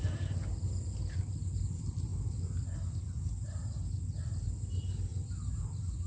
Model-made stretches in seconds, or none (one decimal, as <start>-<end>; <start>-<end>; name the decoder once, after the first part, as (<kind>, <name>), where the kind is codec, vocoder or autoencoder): none